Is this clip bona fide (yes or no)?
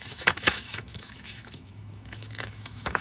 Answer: no